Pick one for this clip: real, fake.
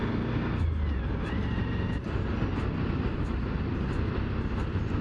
real